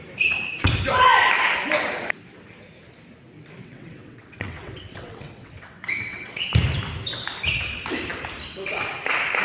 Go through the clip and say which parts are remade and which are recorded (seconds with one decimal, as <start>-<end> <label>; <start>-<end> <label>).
0.0-3.6 recorded; 3.6-6.5 remade; 6.5-9.4 recorded